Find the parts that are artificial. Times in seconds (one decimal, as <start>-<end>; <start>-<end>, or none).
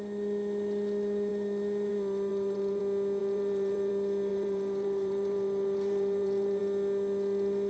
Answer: 2.3-2.8; 3.2-3.9; 4.3-6.6